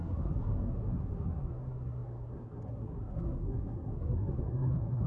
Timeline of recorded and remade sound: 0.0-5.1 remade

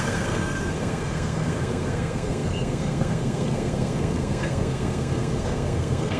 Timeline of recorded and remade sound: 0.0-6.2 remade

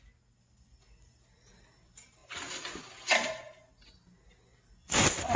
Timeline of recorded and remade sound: 0.0-5.4 recorded

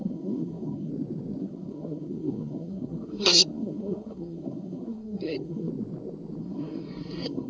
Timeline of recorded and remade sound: 0.0-0.9 remade; 0.9-1.4 recorded; 1.4-5.7 remade; 5.7-6.4 recorded; 6.4-7.5 remade

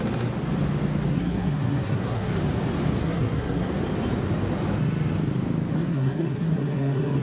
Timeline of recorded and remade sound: 0.0-1.1 recorded; 1.1-2.3 remade; 2.3-3.0 recorded; 3.0-3.7 remade; 3.7-5.7 recorded; 5.7-7.2 remade

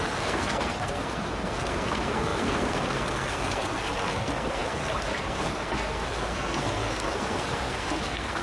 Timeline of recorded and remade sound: 0.0-8.4 remade